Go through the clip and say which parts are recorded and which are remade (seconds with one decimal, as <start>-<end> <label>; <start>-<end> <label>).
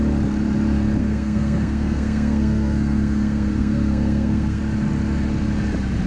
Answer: 0.0-1.0 recorded; 1.0-4.6 remade; 4.6-6.1 recorded